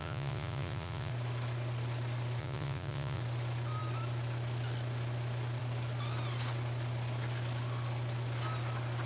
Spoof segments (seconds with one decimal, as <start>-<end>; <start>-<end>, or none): 0.0-1.1; 2.4-3.2